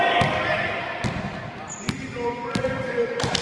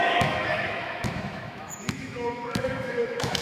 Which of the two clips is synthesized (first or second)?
second